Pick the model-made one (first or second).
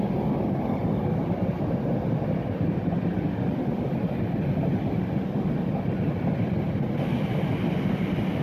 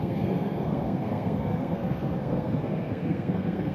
second